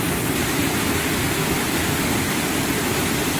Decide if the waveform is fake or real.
real